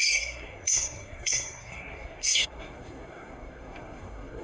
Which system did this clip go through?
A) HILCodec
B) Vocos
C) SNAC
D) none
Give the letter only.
C